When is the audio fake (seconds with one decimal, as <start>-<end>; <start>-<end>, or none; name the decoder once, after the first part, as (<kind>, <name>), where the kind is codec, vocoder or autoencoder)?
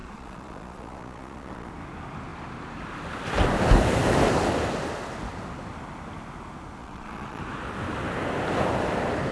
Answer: 0.0-1.7 (vocoder, Vocos); 6.8-7.4